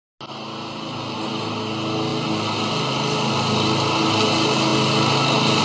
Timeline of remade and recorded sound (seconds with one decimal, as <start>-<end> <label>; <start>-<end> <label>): 0.0-5.6 recorded